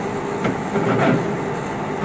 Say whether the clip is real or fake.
real